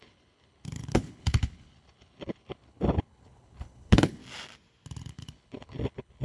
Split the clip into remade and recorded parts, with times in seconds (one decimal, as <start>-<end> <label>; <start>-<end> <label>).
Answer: 0.0-4.2 remade; 4.2-5.0 recorded; 5.0-6.2 remade